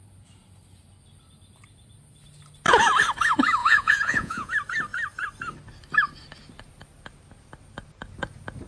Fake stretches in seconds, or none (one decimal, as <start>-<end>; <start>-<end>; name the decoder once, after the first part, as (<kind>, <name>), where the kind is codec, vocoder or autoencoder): 3.6-4.5 (vocoder, Vocos)